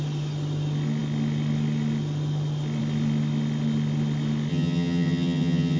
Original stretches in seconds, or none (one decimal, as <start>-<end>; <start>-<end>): 0.0-4.5